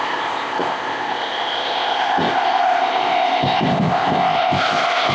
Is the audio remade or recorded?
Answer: remade